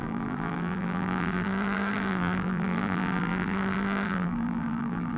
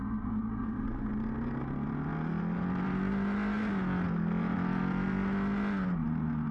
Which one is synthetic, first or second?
first